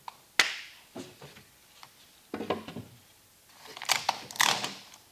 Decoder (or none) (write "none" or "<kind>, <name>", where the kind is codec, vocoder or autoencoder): none